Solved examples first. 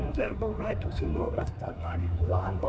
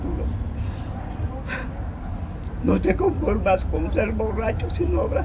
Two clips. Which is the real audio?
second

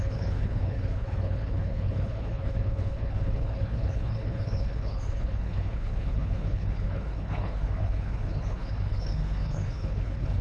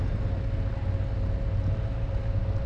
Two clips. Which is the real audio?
second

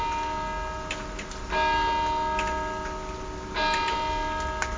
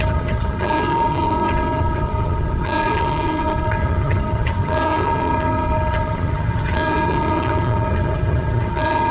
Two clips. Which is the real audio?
first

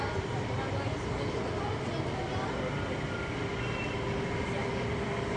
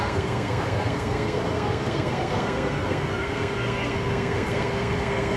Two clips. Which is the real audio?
first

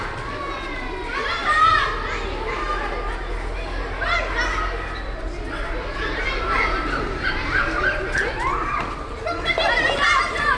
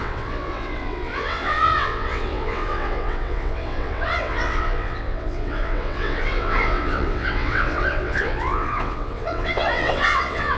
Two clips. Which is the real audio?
first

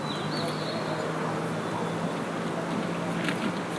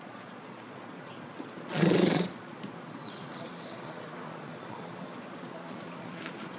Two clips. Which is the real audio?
first